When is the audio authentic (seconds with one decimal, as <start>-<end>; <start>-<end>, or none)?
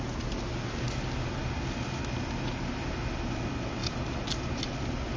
0.0-5.2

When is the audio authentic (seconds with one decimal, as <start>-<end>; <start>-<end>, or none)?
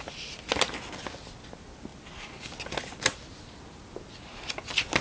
0.0-5.0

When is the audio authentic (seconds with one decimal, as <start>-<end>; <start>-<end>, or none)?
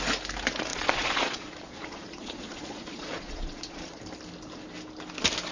0.0-0.7; 4.0-5.5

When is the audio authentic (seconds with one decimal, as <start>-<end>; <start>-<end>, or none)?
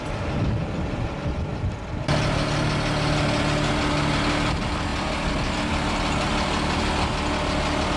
0.0-8.0